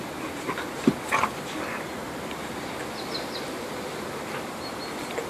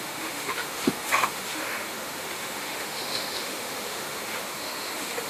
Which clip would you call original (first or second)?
first